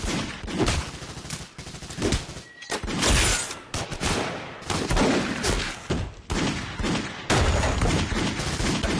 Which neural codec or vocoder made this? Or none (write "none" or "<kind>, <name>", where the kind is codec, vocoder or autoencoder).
none